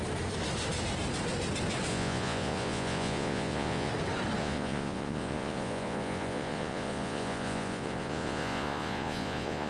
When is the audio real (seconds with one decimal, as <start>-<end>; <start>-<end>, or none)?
0.0-1.9; 3.9-4.4